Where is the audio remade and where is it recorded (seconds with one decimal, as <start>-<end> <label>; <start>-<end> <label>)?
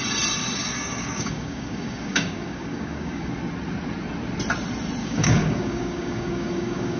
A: 0.0-0.4 recorded; 0.4-3.3 remade; 3.3-5.0 recorded; 5.0-7.0 remade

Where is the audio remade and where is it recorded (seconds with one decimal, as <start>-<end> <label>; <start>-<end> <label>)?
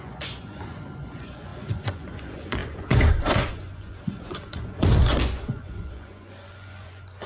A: 0.0-7.3 remade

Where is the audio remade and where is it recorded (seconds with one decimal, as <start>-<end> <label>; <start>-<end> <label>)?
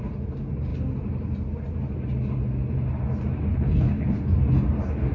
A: 0.0-3.5 recorded; 3.5-4.2 remade; 4.2-5.1 recorded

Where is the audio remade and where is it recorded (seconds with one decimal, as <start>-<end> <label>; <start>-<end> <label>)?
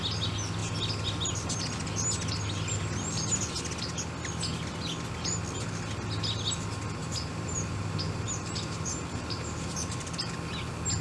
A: 0.0-7.0 recorded; 7.0-10.3 remade; 10.3-11.0 recorded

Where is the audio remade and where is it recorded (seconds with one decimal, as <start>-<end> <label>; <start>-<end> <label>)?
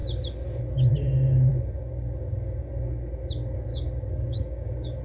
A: 0.0-1.5 recorded; 1.5-2.7 remade; 2.7-3.7 recorded; 3.7-5.0 remade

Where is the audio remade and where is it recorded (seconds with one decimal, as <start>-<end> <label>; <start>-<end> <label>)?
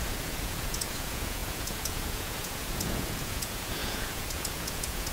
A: 0.0-5.1 remade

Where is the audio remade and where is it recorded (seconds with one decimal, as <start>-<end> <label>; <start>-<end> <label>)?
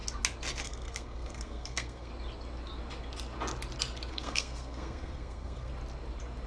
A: 0.0-0.6 recorded; 0.6-2.1 remade; 2.1-4.1 recorded; 4.1-5.7 remade; 5.7-6.5 recorded